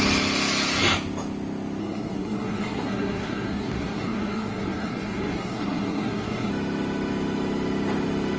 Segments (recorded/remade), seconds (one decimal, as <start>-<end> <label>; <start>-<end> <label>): 0.0-1.8 recorded; 1.8-6.5 remade; 6.5-8.4 recorded